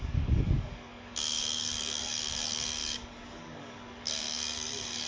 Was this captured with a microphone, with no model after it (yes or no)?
no